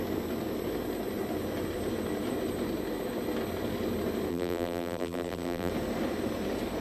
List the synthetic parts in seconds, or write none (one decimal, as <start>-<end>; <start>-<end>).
4.3-5.7

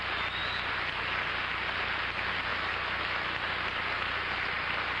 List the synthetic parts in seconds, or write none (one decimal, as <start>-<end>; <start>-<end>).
0.4-1.0; 2.5-5.0

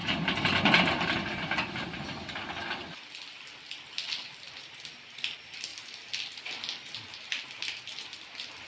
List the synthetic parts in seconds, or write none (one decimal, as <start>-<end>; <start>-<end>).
0.0-0.5

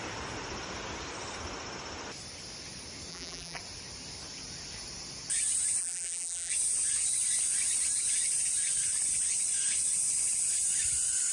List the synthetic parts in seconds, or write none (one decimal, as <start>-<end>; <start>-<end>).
3.1-3.6; 5.8-6.5

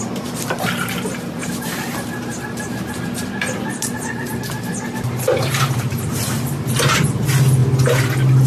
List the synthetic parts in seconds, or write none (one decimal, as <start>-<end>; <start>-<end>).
1.4-4.4